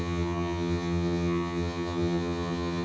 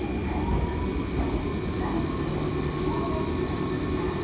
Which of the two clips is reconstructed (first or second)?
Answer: first